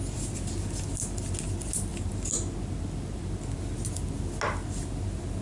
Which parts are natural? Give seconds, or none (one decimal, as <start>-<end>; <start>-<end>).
0.0-5.4